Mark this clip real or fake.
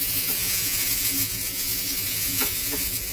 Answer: fake